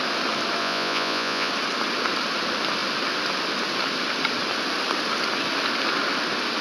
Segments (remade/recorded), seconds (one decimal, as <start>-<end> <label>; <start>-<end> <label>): 0.0-0.6 recorded; 0.6-1.5 remade; 1.5-6.6 recorded